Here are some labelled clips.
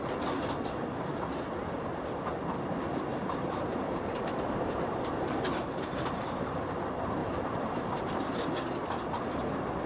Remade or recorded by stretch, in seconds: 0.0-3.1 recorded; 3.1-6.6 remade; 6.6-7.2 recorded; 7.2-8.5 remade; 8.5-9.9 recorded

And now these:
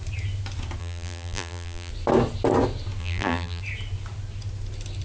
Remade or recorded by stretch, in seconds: 0.0-0.8 recorded; 0.8-1.9 remade; 1.9-3.0 recorded; 3.0-3.6 remade; 3.6-5.0 recorded

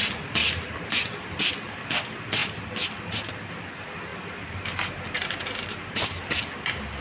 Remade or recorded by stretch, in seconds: 0.0-0.4 recorded; 0.4-1.4 remade; 1.4-4.1 recorded; 4.1-6.4 remade; 6.4-7.0 recorded

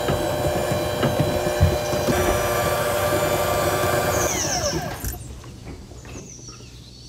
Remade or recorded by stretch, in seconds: 0.0-7.1 recorded

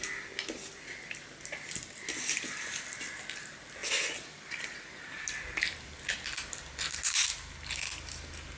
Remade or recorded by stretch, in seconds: 0.0-8.6 recorded

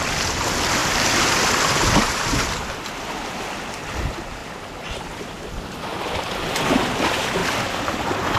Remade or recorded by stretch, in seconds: 0.0-4.4 recorded; 4.4-5.4 remade; 5.4-5.9 recorded; 5.9-7.0 remade; 7.0-7.4 recorded; 7.4-8.0 remade; 8.0-8.4 recorded